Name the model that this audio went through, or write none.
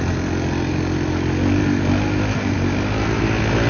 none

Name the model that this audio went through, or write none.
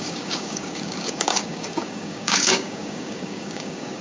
codec, DAC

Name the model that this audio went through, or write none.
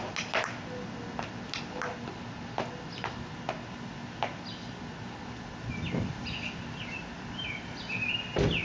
none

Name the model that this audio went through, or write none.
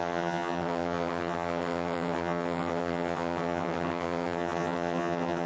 vocoder, HiFi-GAN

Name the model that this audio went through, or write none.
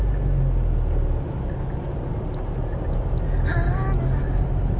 none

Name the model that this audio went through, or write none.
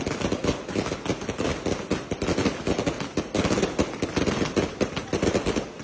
none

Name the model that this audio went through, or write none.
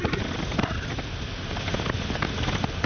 none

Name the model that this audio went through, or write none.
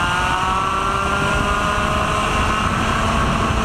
none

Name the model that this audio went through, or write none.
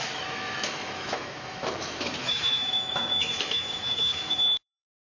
autoencoder, DAC-VAE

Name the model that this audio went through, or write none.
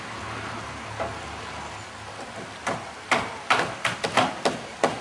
none